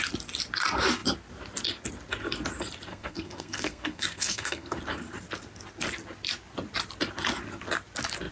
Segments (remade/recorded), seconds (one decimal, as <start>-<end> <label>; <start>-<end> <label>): 0.0-2.9 recorded; 2.9-4.8 remade; 4.8-8.3 recorded